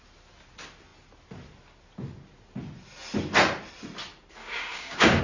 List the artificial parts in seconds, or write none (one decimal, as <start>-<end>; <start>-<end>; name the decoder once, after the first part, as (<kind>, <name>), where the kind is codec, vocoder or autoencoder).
4.4-5.2 (codec, DAC)